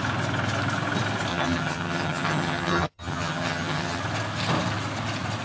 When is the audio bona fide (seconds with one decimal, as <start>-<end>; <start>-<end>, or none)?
0.0-1.3; 4.0-5.4